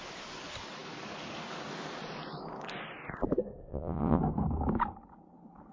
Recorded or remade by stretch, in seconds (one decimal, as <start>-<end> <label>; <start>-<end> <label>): 0.0-3.7 recorded; 3.7-4.2 remade; 4.2-5.7 recorded